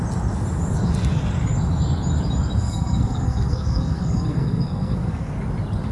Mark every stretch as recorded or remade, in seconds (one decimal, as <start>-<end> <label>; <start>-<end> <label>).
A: 0.0-2.6 recorded; 2.6-5.3 remade; 5.3-5.9 recorded